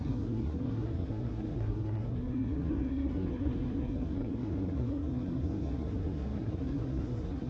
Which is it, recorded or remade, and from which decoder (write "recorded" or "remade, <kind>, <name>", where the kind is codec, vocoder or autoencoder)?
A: remade, codec, SNAC